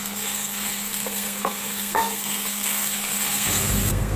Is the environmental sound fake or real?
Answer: fake